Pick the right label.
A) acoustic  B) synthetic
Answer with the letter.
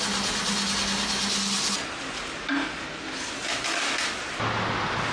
A